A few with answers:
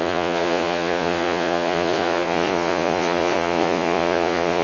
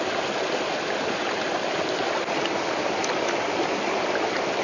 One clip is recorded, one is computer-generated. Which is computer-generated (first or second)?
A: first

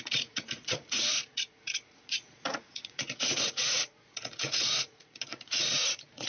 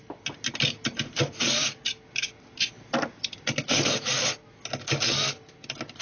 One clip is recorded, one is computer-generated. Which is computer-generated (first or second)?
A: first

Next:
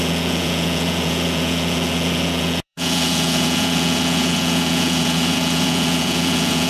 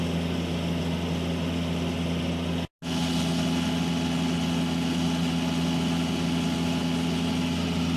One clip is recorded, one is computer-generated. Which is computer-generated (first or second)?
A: first